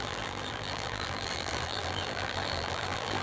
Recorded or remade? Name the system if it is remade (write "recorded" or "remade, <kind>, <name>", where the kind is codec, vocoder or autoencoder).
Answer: remade, vocoder, BigVGAN v2